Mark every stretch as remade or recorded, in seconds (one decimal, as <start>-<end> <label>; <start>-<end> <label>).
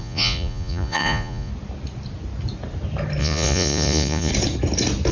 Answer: 0.0-1.5 remade; 1.5-3.2 recorded; 3.2-4.3 remade; 4.3-5.1 recorded